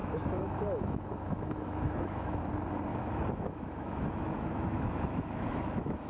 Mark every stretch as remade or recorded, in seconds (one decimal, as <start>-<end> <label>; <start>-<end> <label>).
0.0-2.4 remade; 2.4-2.9 recorded; 2.9-6.1 remade